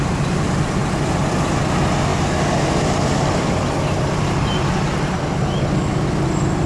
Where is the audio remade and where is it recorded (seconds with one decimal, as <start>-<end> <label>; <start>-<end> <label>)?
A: 0.0-6.7 recorded